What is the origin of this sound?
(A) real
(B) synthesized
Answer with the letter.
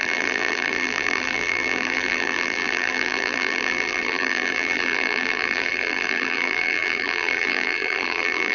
B